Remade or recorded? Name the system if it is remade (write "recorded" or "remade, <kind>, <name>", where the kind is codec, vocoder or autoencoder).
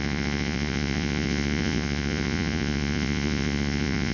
remade, vocoder, Vocos